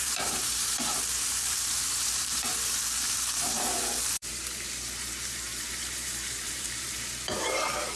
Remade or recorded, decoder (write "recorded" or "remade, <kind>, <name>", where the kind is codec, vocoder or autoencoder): remade, vocoder, BigVGAN v2